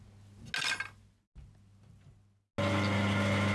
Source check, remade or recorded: recorded